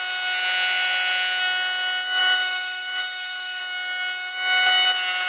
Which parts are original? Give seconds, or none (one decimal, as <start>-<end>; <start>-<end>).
0.0-2.2; 3.6-5.3